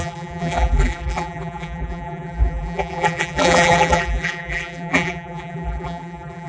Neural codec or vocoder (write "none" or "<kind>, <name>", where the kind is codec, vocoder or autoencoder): vocoder, BigVGAN v2